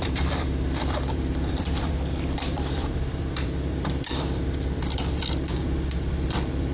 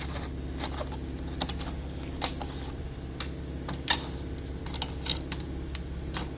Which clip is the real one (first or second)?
second